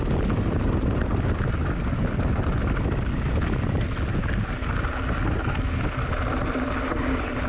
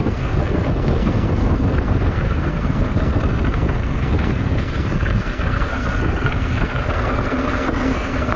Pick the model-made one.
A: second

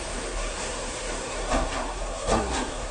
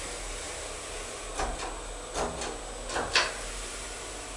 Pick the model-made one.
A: first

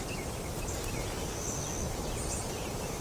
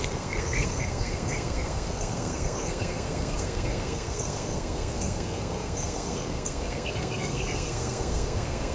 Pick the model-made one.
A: second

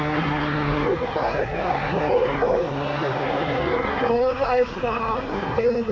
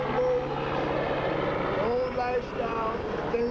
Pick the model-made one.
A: first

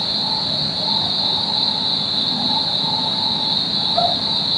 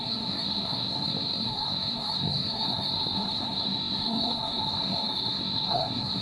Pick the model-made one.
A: second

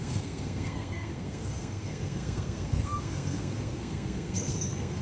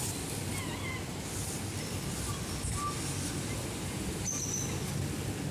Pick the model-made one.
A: first